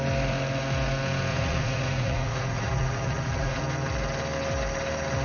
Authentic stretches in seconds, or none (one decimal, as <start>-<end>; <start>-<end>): 0.0-1.3; 3.6-5.2